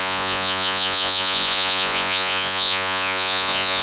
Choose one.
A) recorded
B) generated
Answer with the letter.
B